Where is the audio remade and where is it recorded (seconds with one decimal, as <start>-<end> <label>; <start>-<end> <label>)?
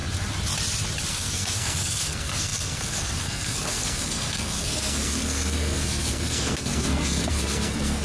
0.0-1.1 recorded; 1.1-8.0 remade